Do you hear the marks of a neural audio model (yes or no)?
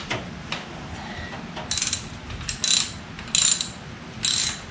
no